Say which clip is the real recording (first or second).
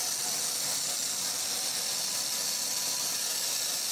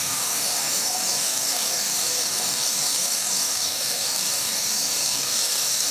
first